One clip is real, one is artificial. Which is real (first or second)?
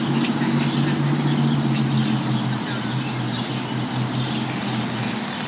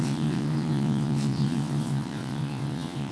first